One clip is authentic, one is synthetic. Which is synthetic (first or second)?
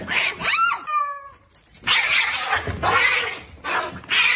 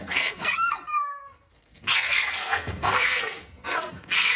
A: second